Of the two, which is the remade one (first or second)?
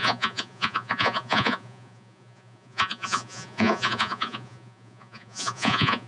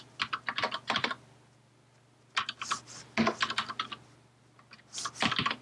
first